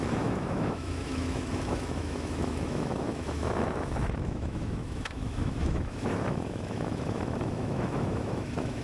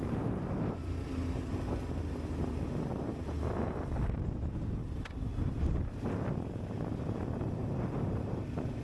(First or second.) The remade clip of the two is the first